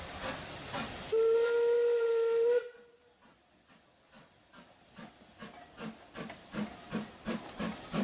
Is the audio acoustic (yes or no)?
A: yes